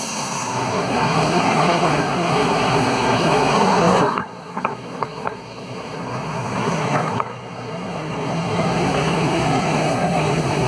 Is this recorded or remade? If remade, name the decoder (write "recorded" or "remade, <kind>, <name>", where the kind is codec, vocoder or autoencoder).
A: remade, codec, SNAC